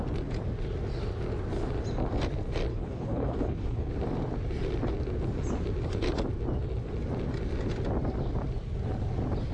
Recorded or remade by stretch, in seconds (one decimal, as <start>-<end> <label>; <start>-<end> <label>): 0.0-2.7 recorded; 2.7-3.9 remade; 3.9-9.5 recorded